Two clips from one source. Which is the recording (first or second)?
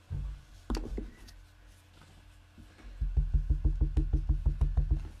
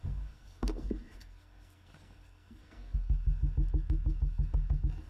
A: first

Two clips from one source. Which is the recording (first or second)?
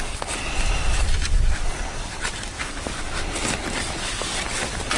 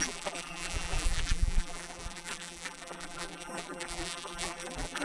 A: first